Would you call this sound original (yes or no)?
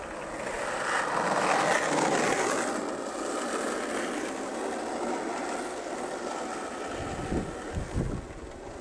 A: yes